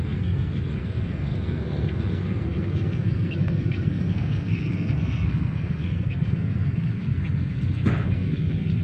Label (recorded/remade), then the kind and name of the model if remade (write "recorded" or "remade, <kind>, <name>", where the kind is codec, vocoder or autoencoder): remade, codec, SNAC